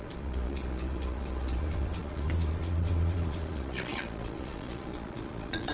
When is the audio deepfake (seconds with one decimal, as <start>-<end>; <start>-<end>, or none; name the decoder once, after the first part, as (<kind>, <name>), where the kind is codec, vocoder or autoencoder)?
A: 0.0-5.7 (vocoder, Vocos)